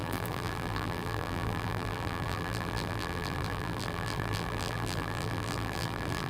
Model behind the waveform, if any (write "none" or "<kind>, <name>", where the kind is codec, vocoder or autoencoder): vocoder, BigVGAN v2